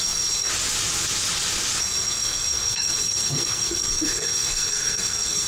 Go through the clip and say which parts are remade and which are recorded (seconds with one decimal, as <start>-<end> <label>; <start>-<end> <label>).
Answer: 0.0-0.5 remade; 0.5-1.8 recorded; 1.8-5.5 remade